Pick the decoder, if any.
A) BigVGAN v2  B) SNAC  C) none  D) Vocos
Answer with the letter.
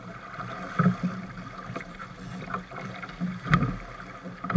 C